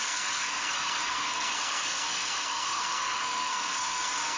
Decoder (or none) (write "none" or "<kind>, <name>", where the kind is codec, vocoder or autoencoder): codec, SNAC